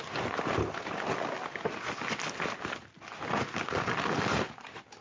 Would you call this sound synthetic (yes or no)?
no